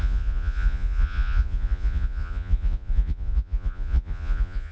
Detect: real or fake fake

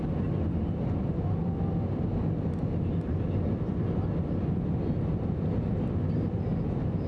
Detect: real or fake real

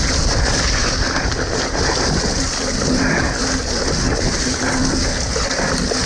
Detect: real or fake real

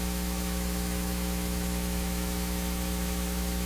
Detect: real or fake fake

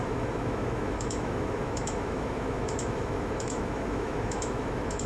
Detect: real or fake fake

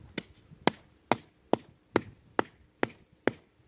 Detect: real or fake real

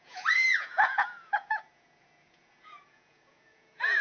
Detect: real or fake fake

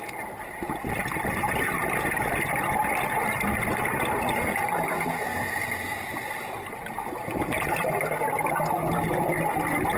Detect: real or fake real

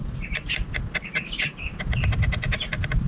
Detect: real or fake real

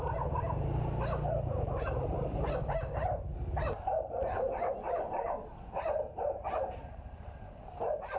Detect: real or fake fake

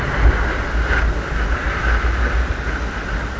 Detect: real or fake real